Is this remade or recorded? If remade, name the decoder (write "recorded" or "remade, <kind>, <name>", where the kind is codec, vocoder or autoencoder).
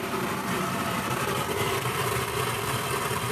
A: remade, vocoder, BigVGAN v2